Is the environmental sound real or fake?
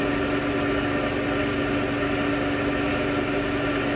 real